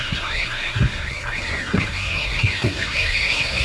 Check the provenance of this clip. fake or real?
fake